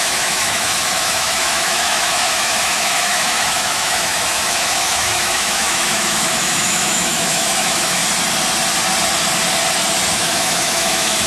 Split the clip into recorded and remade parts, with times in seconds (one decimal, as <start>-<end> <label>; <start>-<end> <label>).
0.0-8.0 remade; 8.0-10.1 recorded; 10.1-11.3 remade